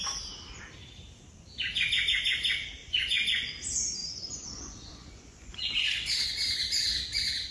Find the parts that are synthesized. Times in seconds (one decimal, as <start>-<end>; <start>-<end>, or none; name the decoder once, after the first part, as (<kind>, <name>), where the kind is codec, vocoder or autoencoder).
2.8-3.5 (vocoder, Vocos); 4.0-6.3